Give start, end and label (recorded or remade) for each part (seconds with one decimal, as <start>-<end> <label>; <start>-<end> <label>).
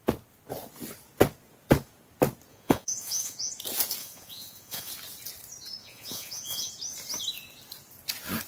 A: 0.0-2.5 recorded; 2.5-3.5 remade; 3.5-4.0 recorded; 4.0-4.9 remade; 4.9-5.8 recorded; 5.8-6.7 remade; 6.7-8.5 recorded